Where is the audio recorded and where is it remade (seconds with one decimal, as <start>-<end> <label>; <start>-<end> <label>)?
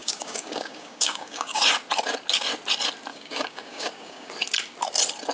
0.0-1.6 remade; 1.6-3.1 recorded; 3.1-4.3 remade; 4.3-5.3 recorded